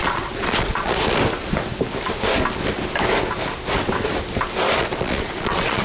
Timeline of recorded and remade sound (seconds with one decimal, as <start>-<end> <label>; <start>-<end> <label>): 0.0-1.2 remade; 1.2-4.8 recorded; 4.8-5.8 remade